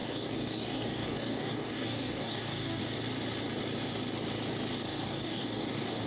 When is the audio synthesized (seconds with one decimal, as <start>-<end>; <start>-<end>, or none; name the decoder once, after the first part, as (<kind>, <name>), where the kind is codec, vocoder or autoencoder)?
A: 0.0-2.8 (codec, DAC); 4.9-6.1